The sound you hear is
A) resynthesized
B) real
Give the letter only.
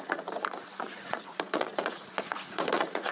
A